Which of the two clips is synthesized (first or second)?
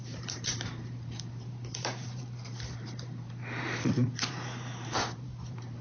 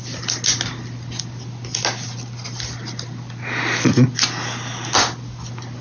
first